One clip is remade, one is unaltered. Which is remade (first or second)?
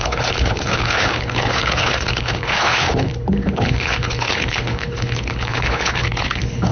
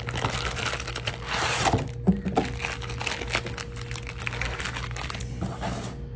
first